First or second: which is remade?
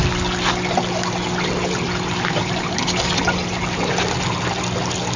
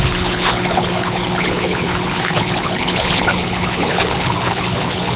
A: second